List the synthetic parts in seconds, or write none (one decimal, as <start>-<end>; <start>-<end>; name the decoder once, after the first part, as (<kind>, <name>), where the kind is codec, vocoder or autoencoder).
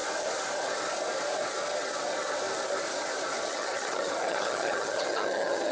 3.4-5.7 (vocoder, HiFi-GAN)